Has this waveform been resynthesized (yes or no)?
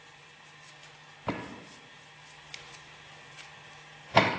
no